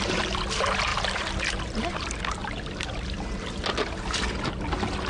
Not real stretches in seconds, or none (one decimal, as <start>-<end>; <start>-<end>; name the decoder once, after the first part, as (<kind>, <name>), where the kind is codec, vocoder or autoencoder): 0.9-1.6 (vocoder, BigVGAN v2)